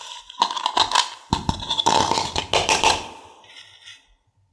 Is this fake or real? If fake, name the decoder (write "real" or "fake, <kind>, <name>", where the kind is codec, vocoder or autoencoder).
real